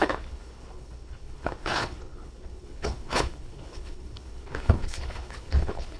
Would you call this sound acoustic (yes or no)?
no